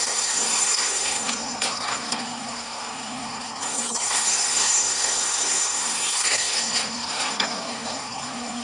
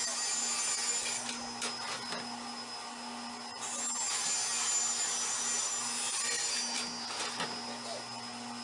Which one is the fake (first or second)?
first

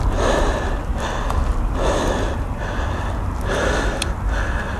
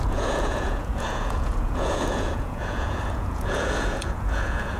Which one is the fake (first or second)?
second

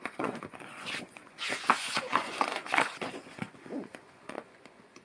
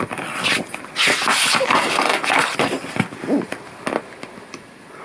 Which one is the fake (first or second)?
first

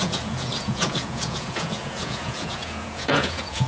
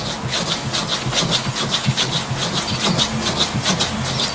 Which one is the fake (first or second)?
first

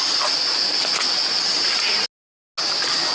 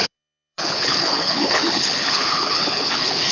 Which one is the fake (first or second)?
second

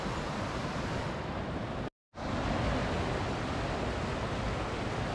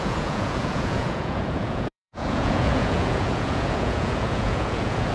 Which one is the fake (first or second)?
second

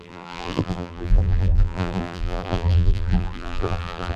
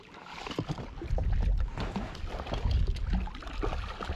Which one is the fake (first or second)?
first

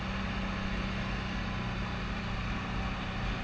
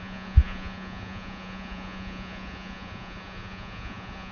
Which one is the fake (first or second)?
second